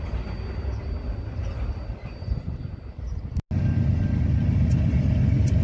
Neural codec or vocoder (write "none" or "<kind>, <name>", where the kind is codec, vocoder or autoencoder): none